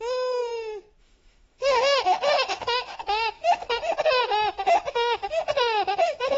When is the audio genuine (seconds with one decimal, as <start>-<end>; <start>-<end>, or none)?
0.5-1.0; 3.8-4.9